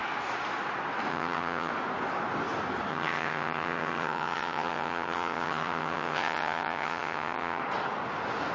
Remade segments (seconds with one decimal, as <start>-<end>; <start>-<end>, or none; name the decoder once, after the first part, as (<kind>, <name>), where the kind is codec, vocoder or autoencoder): 1.1-1.7 (vocoder, HiFi-GAN); 2.9-7.6